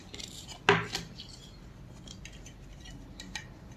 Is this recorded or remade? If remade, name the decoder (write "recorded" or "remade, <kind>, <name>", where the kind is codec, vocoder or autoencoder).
recorded